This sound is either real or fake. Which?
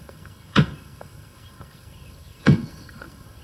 fake